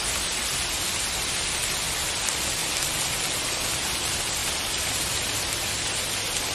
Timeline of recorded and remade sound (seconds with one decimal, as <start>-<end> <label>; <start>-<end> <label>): 0.0-6.5 recorded